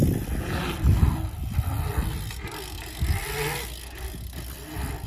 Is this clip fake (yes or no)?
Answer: no